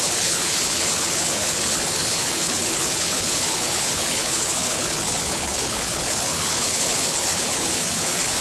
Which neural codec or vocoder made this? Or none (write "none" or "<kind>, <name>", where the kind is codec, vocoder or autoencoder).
codec, HILCodec